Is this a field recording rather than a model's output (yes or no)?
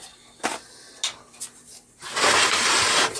yes